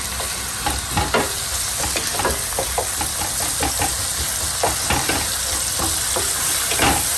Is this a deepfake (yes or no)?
no